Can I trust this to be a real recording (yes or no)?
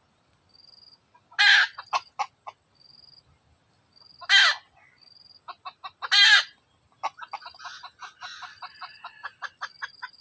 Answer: yes